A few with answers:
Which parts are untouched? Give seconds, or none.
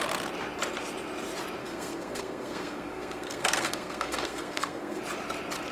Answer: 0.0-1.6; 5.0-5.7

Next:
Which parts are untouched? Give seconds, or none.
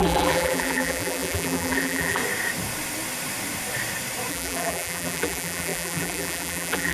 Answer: 2.2-4.3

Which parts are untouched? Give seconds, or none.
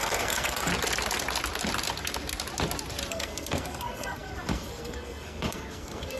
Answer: 0.7-3.1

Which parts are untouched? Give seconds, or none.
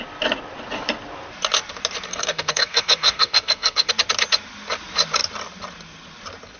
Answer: 0.0-2.1; 3.9-6.6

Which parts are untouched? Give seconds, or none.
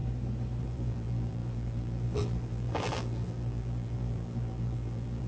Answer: 0.0-0.6